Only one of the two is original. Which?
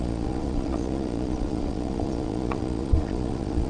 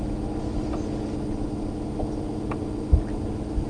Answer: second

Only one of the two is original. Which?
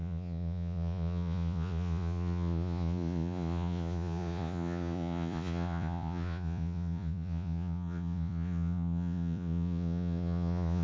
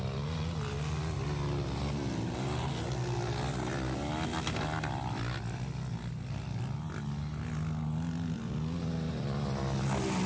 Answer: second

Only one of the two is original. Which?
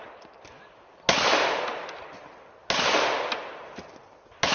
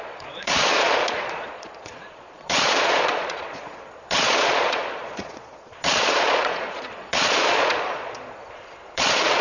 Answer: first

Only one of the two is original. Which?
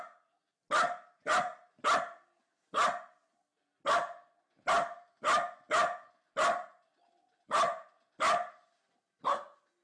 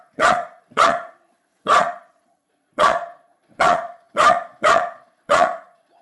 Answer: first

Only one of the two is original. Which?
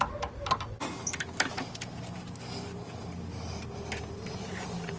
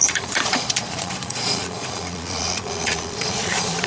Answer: first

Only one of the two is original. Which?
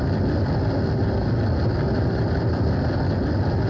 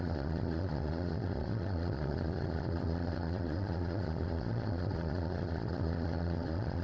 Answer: first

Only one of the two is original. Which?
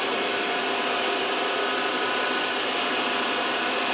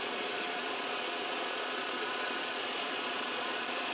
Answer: first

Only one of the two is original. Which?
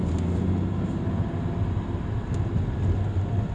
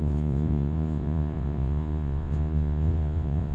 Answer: first